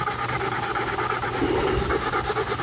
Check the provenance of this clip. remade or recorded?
recorded